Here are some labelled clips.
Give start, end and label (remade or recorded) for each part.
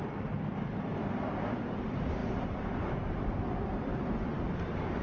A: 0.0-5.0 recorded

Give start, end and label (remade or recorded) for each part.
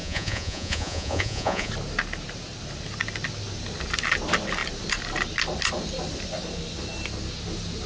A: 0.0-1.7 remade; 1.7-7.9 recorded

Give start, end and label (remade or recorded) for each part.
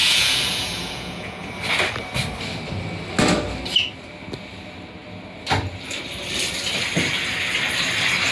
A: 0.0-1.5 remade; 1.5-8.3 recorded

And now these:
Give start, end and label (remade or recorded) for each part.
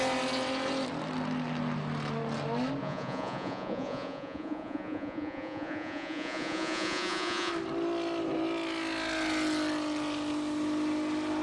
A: 0.0-2.8 recorded; 2.8-7.5 remade; 7.5-11.4 recorded